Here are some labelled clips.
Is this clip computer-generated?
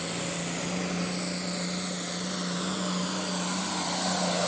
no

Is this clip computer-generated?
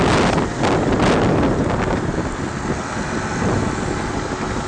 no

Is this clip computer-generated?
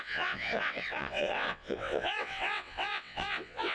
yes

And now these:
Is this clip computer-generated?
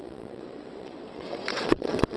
yes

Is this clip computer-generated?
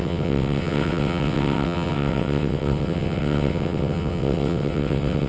yes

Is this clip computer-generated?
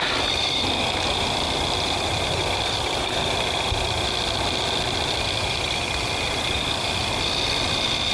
no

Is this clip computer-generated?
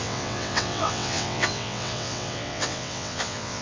yes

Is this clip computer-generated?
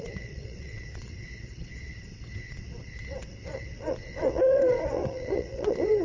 yes